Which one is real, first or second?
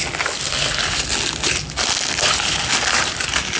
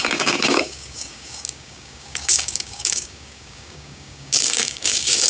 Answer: first